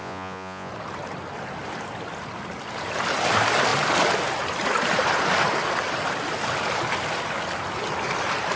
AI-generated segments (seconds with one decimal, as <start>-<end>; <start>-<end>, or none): 0.0-0.7

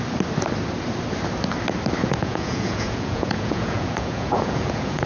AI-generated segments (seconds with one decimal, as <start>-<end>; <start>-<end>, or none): 2.0-5.1